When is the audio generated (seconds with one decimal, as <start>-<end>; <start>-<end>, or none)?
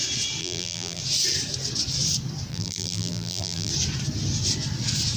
0.4-1.0; 2.5-3.7